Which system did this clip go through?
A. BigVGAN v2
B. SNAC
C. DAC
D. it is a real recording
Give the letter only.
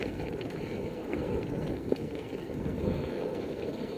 B